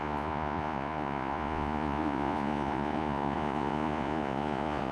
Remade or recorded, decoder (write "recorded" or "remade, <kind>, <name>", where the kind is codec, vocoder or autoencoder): remade, vocoder, Vocos